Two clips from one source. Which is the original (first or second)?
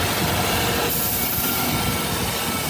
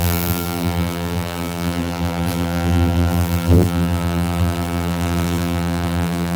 first